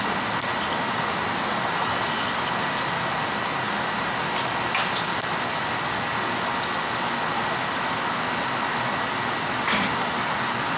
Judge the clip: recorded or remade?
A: recorded